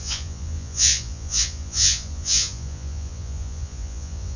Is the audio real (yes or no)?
no